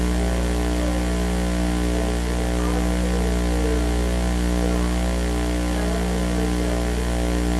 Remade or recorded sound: recorded